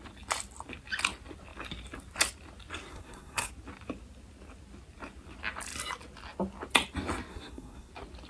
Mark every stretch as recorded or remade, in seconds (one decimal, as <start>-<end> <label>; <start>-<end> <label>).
0.0-2.9 recorded; 2.9-3.5 remade; 3.5-7.3 recorded; 7.3-7.9 remade; 7.9-8.3 recorded